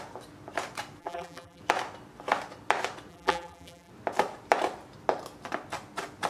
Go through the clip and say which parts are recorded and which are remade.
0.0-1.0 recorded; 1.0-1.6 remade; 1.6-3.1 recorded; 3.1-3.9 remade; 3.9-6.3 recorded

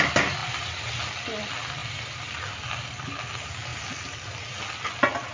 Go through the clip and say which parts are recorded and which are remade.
0.0-0.4 recorded; 0.4-1.2 remade; 1.2-1.8 recorded; 1.8-3.2 remade; 3.2-5.3 recorded

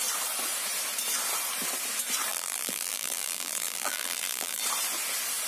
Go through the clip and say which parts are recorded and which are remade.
0.0-2.3 recorded; 2.3-4.6 remade; 4.6-5.5 recorded

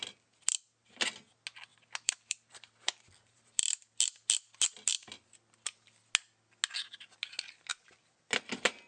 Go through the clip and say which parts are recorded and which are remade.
0.0-1.7 recorded; 1.7-3.7 remade; 3.7-7.7 recorded; 7.7-8.2 remade; 8.2-8.9 recorded

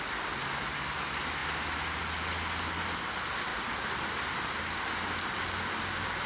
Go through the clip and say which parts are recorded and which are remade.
0.0-3.5 recorded; 3.5-4.4 remade; 4.4-6.3 recorded

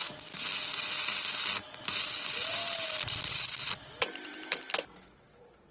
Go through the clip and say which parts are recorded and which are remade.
0.0-5.7 recorded